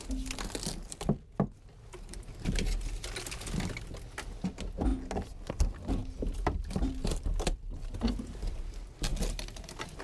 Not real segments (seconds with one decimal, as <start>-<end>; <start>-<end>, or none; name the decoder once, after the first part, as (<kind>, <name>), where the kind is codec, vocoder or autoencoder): none